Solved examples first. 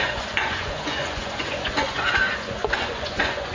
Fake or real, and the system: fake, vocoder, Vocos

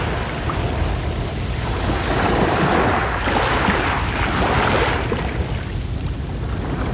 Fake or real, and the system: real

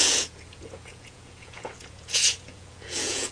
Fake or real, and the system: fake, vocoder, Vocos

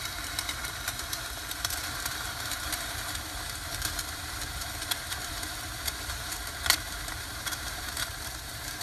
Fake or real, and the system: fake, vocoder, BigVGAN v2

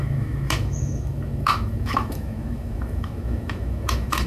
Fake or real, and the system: fake, autoencoder, DAC-VAE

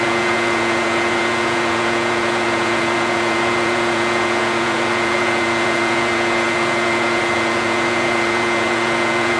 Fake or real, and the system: fake, vocoder, Vocos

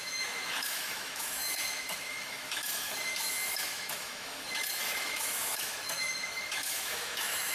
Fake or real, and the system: fake, autoencoder, DAC-VAE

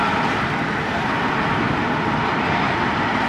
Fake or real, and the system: real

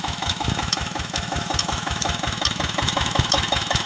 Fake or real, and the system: fake, autoencoder, DAC-VAE